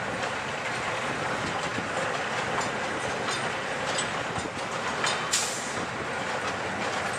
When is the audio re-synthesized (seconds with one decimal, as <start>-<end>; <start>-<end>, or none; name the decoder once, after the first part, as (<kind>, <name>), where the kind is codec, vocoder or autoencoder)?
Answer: none